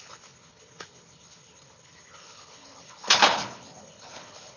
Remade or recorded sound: remade